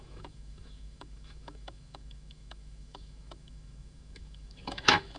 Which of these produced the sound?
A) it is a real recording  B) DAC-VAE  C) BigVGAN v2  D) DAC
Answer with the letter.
B